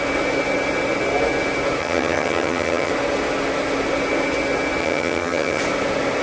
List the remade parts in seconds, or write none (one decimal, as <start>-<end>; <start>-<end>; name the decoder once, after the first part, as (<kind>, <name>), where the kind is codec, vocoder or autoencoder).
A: 1.8-2.9 (vocoder, HiFi-GAN); 4.8-5.6

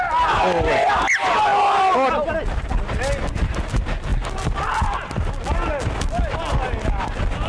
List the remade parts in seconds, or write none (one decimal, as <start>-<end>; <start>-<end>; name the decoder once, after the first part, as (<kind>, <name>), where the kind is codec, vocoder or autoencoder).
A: none

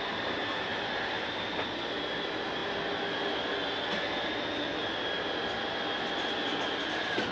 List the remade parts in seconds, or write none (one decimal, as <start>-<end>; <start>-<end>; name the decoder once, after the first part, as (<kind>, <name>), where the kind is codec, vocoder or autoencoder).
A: none

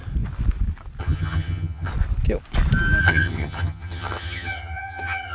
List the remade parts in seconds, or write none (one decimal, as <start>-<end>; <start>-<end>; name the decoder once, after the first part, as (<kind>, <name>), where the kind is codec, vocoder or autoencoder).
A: 1.0-1.9 (vocoder, HiFi-GAN); 3.0-5.3